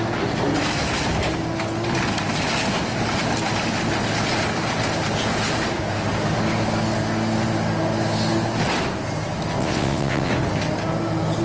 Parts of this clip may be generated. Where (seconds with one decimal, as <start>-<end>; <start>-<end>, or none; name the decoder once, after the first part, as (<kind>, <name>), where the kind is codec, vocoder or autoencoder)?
9.6-10.3 (vocoder, WaveNeXt)